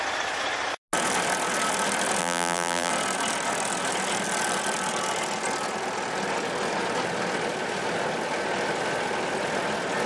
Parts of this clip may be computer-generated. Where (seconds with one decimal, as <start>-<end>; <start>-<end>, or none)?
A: 2.2-2.9